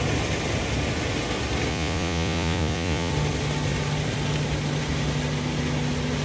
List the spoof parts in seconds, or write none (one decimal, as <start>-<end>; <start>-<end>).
1.7-3.1